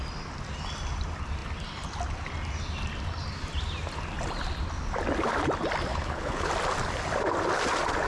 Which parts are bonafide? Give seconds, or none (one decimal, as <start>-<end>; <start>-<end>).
0.0-5.9; 6.5-8.1